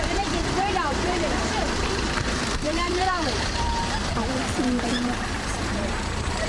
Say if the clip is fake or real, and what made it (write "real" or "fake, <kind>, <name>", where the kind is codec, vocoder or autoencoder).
fake, vocoder, BigVGAN v2